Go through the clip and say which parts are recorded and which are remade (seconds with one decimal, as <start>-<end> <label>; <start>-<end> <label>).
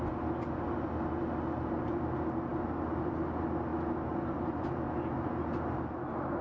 0.0-6.4 recorded